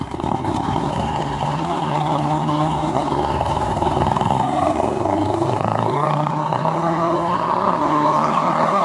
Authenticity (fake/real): fake